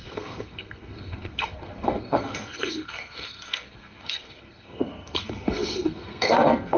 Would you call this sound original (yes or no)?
no